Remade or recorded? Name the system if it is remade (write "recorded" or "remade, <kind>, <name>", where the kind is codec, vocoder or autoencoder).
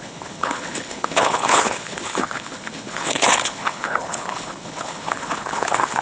remade, codec, HILCodec